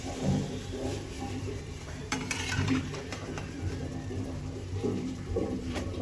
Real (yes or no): no